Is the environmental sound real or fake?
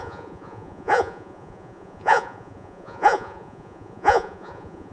fake